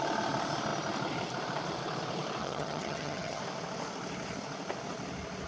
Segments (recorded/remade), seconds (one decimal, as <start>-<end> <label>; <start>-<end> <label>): 0.0-2.4 recorded; 2.4-3.4 remade; 3.4-5.5 recorded